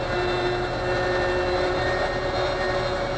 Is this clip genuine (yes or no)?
yes